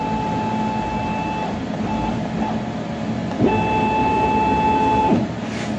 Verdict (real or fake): real